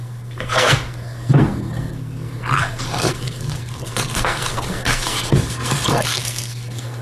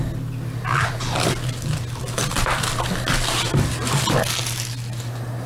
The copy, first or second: first